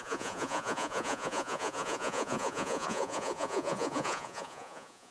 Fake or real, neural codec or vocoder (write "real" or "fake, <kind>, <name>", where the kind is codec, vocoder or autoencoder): fake, vocoder, Vocos